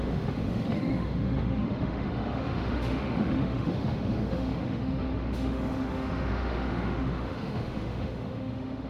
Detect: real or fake fake